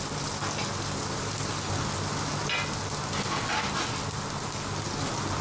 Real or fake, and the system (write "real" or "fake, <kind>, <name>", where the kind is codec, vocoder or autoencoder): real